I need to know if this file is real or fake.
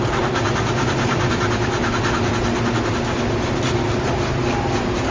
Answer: real